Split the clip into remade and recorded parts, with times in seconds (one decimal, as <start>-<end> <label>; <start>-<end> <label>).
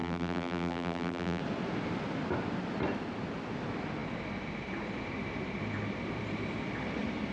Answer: 0.0-1.4 remade; 1.4-7.3 recorded